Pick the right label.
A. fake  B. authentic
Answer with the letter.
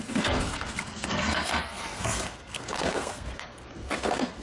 A